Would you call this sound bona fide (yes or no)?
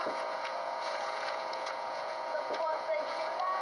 no